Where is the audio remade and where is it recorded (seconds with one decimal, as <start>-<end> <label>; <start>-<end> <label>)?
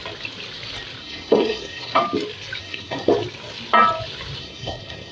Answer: 0.0-1.0 recorded; 1.0-2.0 remade; 2.0-2.6 recorded; 2.6-3.1 remade; 3.1-4.4 recorded; 4.4-5.1 remade